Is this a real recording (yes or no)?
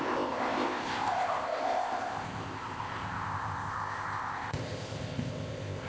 no